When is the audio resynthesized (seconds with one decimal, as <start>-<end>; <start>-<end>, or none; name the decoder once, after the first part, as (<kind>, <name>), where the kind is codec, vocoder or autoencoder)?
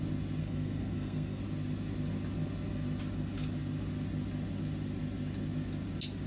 0.4-1.4 (codec, SNAC)